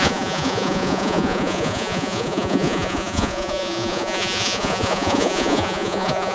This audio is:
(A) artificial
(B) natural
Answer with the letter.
A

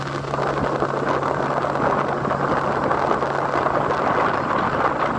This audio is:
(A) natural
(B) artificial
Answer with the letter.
A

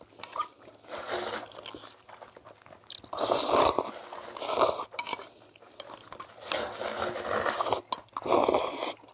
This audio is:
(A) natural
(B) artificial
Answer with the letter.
A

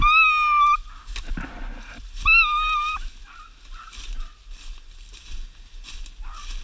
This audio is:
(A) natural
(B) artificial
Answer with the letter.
A